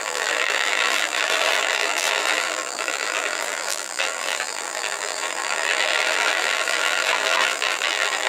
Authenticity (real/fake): fake